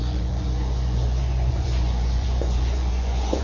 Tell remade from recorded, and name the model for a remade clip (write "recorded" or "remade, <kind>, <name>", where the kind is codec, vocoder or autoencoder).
remade, vocoder, Vocos